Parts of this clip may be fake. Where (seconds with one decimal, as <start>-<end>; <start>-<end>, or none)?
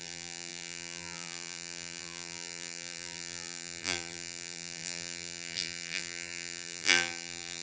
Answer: 0.0-7.6